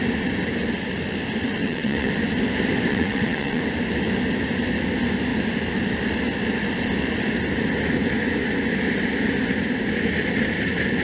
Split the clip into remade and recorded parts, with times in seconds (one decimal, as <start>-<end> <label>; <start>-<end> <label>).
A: 0.0-1.6 recorded; 1.6-2.1 remade; 2.1-2.9 recorded; 2.9-3.6 remade; 3.6-11.0 recorded